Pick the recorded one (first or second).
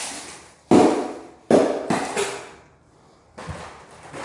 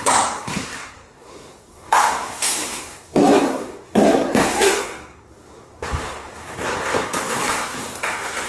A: first